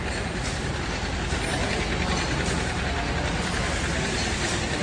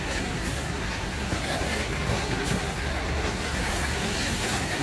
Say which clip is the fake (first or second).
second